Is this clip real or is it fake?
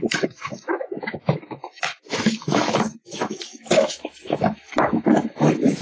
fake